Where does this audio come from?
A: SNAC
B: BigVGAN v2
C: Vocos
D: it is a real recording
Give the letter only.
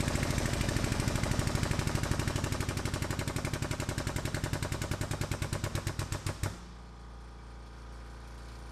D